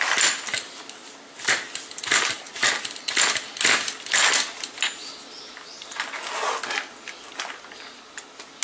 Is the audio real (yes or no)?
yes